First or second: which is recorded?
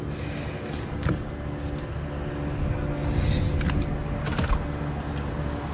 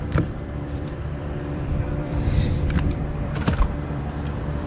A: first